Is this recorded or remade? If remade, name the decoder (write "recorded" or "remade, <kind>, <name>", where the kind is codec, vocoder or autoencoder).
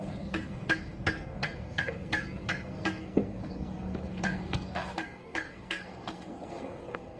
remade, codec, SNAC